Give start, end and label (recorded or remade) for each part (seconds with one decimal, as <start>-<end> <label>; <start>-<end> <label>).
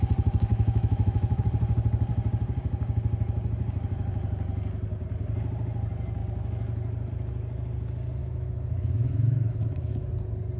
0.0-0.5 recorded; 0.5-1.4 remade; 1.4-8.2 recorded; 8.2-10.1 remade; 10.1-10.6 recorded